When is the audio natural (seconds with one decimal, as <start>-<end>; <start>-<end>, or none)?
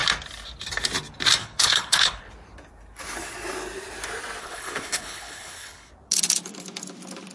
0.0-1.4; 2.2-4.4; 5.9-7.3